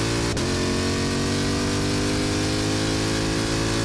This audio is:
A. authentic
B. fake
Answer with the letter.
A